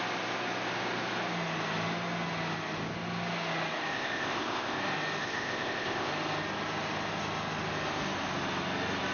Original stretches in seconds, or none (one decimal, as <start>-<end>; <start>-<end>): 0.0-3.9; 4.8-5.2; 6.1-9.1